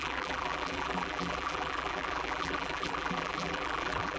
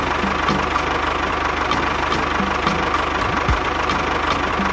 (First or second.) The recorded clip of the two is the second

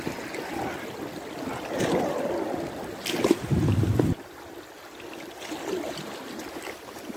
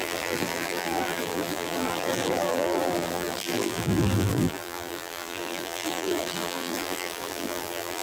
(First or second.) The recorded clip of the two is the first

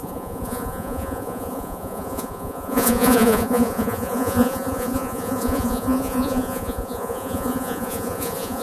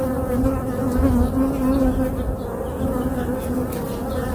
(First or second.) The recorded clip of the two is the second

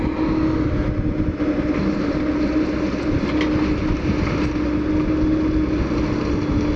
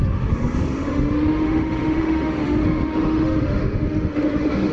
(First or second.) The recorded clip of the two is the first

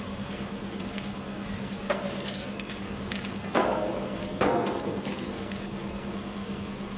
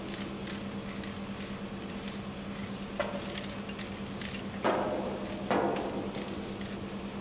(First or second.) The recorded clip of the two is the second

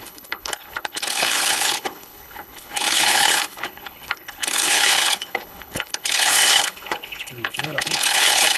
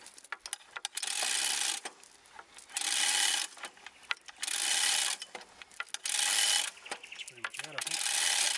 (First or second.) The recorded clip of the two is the second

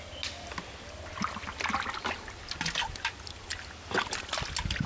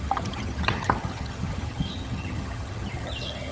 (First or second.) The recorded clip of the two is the first